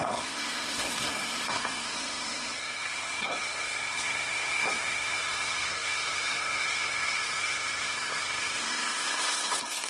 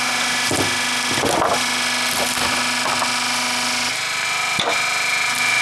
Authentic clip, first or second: second